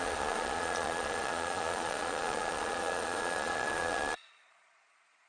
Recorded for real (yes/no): no